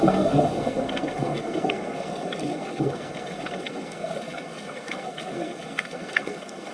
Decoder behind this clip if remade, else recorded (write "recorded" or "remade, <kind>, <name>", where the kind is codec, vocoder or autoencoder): remade, codec, SNAC